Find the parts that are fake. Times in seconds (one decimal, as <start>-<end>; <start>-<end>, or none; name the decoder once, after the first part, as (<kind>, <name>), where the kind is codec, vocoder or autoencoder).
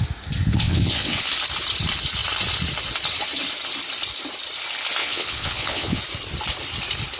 0.5-1.2 (vocoder, WaveNeXt); 5.0-6.0